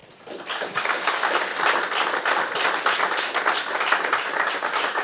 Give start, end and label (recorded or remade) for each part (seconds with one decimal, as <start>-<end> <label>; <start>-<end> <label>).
0.0-0.5 recorded; 0.5-1.5 remade; 1.5-4.5 recorded; 4.5-5.0 remade